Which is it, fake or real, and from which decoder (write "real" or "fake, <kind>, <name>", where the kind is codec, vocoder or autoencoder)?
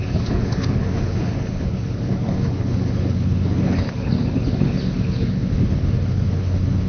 fake, codec, HILCodec